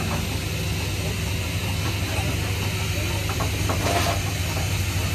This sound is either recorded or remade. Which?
recorded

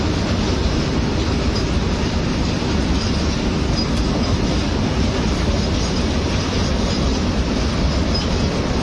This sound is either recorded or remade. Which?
recorded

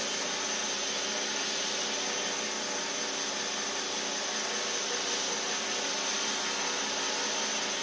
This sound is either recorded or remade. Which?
recorded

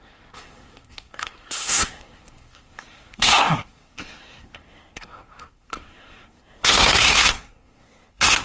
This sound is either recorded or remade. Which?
remade